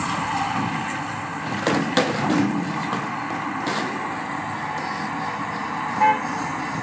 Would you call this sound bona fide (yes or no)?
yes